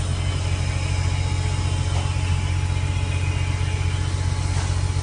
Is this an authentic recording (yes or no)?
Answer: yes